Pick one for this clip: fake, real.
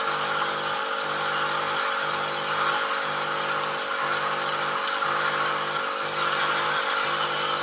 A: real